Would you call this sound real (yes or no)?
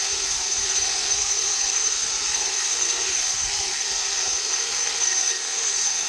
no